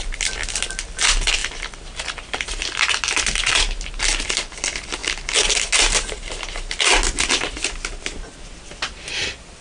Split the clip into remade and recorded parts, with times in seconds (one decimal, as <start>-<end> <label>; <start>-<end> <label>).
0.0-9.6 recorded